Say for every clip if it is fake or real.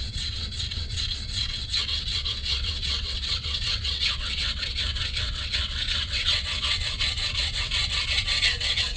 fake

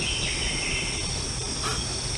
real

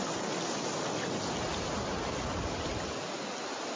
real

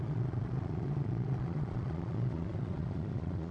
fake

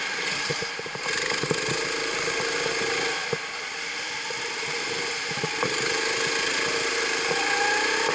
real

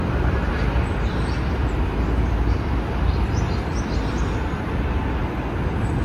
real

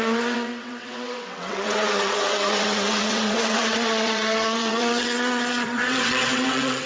fake